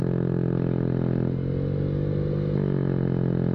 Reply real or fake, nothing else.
real